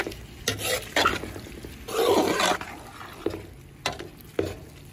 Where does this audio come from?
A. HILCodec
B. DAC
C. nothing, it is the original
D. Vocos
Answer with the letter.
C